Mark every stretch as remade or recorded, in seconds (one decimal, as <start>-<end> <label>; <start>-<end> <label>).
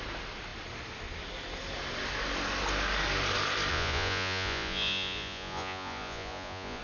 0.0-3.7 recorded; 3.7-6.8 remade